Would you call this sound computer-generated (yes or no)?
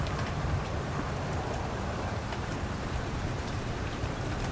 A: yes